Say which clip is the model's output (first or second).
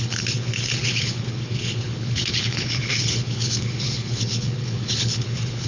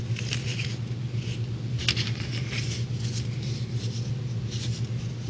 first